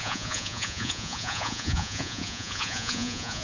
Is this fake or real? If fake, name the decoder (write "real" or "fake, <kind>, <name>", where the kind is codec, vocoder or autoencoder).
fake, vocoder, Vocos